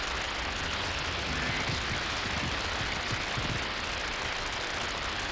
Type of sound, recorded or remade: recorded